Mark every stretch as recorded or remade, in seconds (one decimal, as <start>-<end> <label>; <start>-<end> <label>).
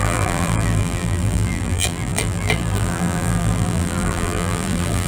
0.0-5.1 remade